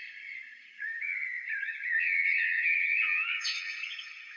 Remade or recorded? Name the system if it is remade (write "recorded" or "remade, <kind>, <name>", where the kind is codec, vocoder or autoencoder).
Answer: remade, vocoder, HiFi-GAN